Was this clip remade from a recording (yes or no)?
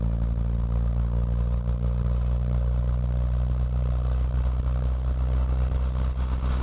no